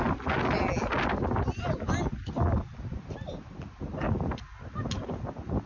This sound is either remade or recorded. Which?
recorded